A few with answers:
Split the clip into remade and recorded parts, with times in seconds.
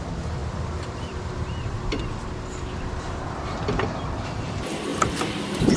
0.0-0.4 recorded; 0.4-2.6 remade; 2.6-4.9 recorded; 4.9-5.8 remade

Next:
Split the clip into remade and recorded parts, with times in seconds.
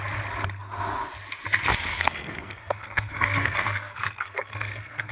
0.0-1.9 recorded; 1.9-5.1 remade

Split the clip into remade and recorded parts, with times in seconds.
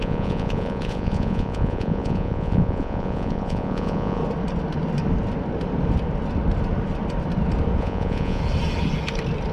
0.0-4.2 remade; 4.2-7.8 recorded; 7.8-8.4 remade; 8.4-9.5 recorded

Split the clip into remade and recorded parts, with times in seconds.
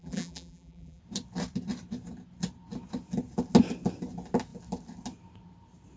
0.0-1.0 remade; 1.0-6.0 recorded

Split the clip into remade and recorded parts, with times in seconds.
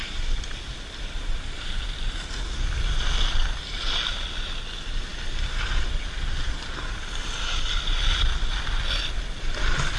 0.0-10.0 recorded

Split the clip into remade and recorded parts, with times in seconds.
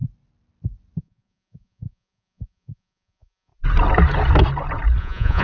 0.0-1.0 recorded; 1.0-3.5 remade; 3.5-5.0 recorded; 5.0-5.4 remade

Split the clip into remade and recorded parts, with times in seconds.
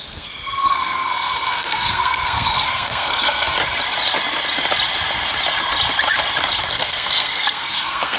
0.0-3.5 remade; 3.5-6.7 recorded; 6.7-8.2 remade